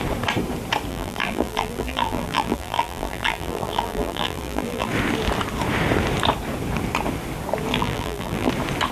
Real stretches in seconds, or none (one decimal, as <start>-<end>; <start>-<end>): 0.0-0.9; 4.9-7.7; 8.5-8.9